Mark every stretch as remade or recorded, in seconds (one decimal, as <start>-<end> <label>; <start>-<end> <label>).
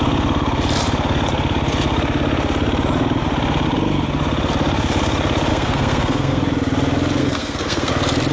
0.0-5.5 recorded; 5.5-6.4 remade; 6.4-7.2 recorded; 7.2-7.9 remade; 7.9-8.3 recorded